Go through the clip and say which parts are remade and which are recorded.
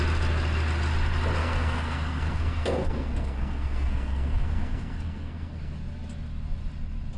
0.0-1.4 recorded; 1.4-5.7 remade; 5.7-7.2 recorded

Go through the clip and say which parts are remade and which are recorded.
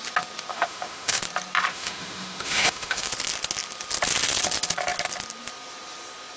0.0-0.5 recorded; 0.5-1.2 remade; 1.2-1.7 recorded; 1.7-3.1 remade; 3.1-6.4 recorded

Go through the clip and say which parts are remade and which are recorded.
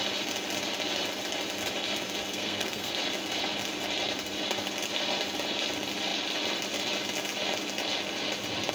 0.0-2.3 recorded; 2.3-2.9 remade; 2.9-8.7 recorded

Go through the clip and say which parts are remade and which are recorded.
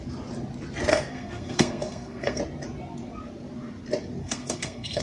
0.0-0.9 recorded; 0.9-2.4 remade; 2.4-4.2 recorded; 4.2-5.0 remade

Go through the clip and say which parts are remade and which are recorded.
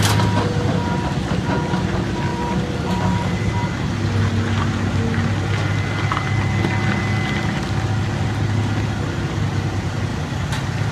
0.0-2.3 recorded; 2.3-3.5 remade; 3.5-10.1 recorded; 10.1-10.9 remade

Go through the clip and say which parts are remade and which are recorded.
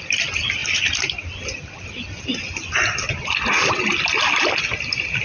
0.0-5.2 recorded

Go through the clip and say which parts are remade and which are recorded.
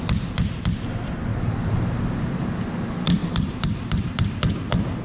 0.0-1.3 recorded; 1.3-1.8 remade; 1.8-3.2 recorded; 3.2-4.4 remade; 4.4-5.0 recorded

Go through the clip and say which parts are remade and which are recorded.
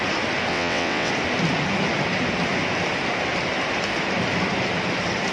0.0-0.5 recorded; 0.5-1.1 remade; 1.1-5.3 recorded